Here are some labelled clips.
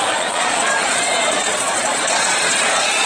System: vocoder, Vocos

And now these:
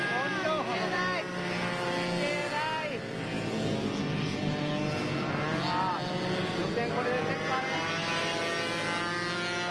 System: none